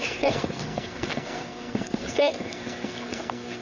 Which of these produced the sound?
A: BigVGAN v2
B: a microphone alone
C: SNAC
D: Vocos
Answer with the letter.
C